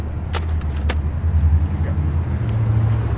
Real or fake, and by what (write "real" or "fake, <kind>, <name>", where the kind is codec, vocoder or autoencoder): real